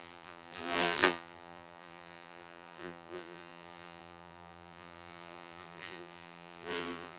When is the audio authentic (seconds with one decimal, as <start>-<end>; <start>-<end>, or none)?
none